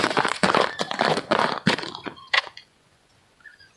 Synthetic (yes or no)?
yes